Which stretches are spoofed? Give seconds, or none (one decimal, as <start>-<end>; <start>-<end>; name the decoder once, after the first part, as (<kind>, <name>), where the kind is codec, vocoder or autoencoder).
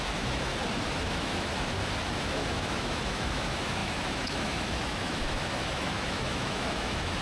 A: 0.0-0.5 (autoencoder, DAC-VAE); 1.0-1.5; 2.1-7.2